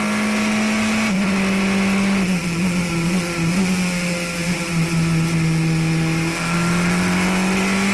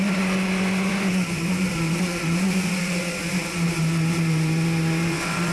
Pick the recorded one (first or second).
first